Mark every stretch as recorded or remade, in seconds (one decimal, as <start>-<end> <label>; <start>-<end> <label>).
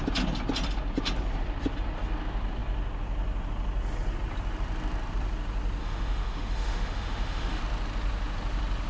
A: 0.0-5.8 recorded; 5.8-7.6 remade; 7.6-8.9 recorded